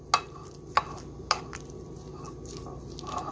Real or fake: real